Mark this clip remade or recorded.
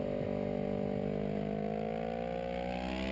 recorded